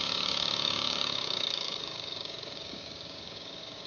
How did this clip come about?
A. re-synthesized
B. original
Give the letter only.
A